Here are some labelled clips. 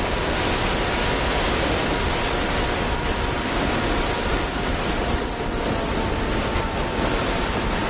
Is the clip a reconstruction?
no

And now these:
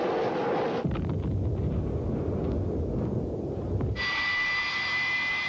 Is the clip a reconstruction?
no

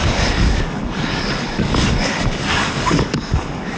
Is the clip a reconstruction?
yes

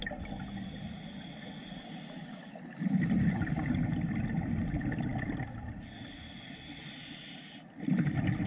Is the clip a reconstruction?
no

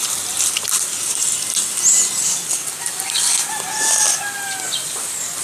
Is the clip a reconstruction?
no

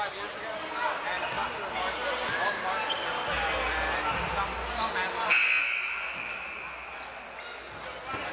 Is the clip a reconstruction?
no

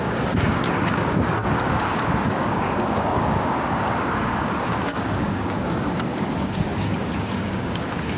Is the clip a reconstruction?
yes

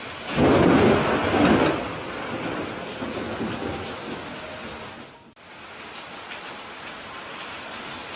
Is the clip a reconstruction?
no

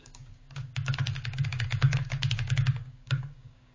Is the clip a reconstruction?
yes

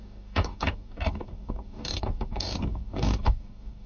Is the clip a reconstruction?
yes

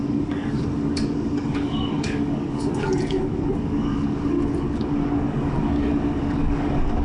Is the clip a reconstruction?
yes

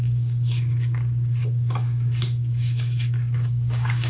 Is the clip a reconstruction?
yes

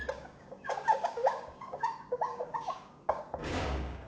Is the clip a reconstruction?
yes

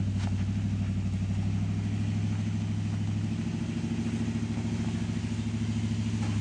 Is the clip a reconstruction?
no